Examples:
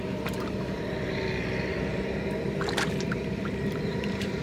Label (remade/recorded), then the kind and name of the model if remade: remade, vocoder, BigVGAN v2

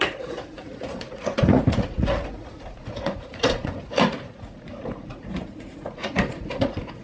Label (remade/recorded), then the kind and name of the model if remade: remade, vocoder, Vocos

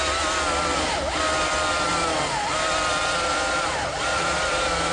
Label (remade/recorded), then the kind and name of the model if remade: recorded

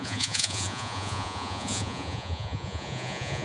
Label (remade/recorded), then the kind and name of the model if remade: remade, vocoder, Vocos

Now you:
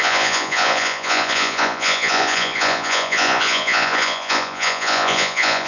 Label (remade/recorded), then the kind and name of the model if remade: remade, vocoder, Vocos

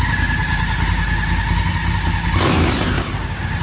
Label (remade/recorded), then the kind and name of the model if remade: recorded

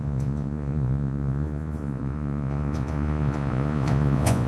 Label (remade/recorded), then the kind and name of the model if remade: remade, vocoder, Vocos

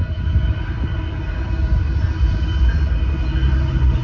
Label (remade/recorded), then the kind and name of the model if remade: recorded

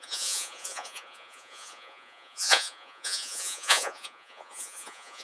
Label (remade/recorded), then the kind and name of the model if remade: remade, vocoder, Vocos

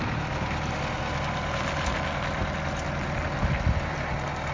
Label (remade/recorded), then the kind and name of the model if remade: recorded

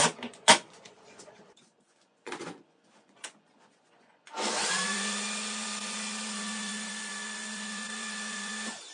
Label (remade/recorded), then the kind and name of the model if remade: remade, vocoder, Vocos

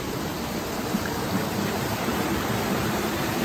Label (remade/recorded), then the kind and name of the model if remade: remade, vocoder, BigVGAN v2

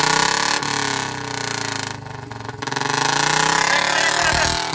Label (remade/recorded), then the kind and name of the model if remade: recorded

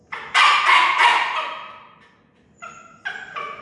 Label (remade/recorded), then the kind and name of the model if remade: recorded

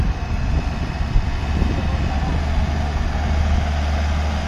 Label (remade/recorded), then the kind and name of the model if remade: recorded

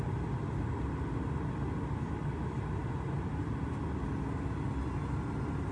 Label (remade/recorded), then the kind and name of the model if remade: recorded